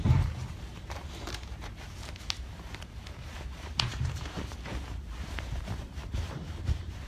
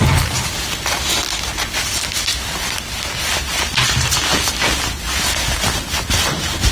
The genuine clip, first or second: second